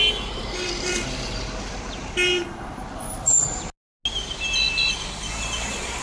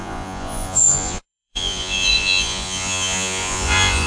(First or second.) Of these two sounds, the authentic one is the first